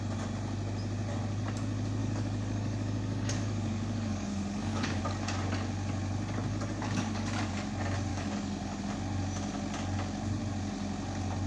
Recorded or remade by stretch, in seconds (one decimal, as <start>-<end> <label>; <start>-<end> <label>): 0.0-2.0 recorded; 2.0-5.0 remade; 5.0-6.5 recorded; 6.5-7.5 remade; 7.5-8.1 recorded; 8.1-8.8 remade; 8.8-11.5 recorded